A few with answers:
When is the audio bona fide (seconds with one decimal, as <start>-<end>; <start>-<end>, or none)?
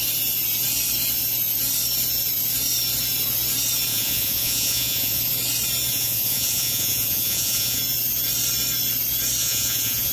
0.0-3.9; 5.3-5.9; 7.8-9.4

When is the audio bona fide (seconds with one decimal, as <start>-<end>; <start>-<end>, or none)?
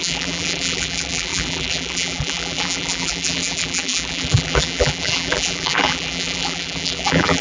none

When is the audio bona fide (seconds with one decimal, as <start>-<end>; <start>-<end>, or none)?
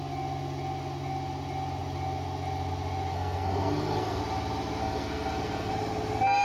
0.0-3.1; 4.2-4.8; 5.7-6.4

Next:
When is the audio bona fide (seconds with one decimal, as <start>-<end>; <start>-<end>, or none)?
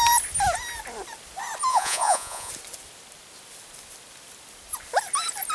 0.0-1.7; 2.5-5.5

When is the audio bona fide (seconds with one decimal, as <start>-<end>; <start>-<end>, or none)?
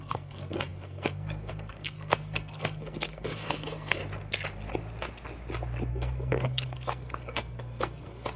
4.0-5.9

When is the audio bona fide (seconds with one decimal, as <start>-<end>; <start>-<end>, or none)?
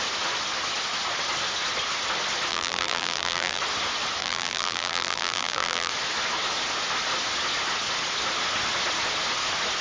0.0-2.5; 3.6-4.2; 5.9-9.8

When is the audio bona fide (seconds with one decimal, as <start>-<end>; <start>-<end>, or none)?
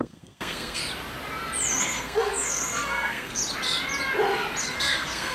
0.8-1.8; 3.4-4.6